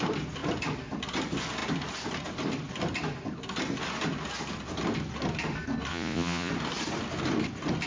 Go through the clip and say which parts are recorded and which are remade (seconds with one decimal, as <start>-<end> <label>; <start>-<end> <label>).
0.0-5.9 recorded; 5.9-6.5 remade; 6.5-7.9 recorded